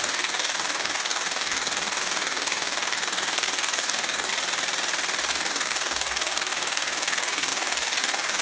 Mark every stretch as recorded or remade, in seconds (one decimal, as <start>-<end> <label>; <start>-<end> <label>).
0.0-4.3 remade; 4.3-5.3 recorded; 5.3-8.4 remade